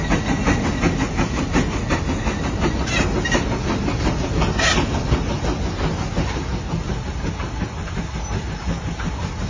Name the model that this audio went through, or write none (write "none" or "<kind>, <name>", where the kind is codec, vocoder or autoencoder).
none